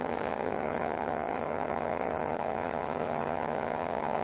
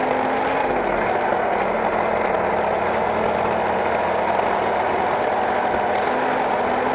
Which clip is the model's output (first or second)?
first